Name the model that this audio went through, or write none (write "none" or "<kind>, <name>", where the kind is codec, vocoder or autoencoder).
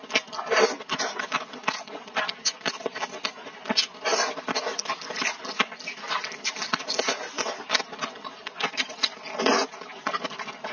none